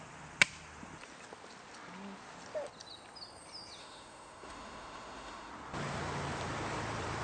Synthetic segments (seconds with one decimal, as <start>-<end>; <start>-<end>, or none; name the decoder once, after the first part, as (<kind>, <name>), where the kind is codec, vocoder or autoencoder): 3.8-5.5 (autoencoder, DAC-VAE)